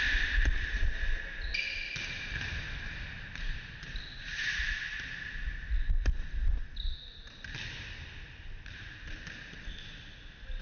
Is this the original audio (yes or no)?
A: yes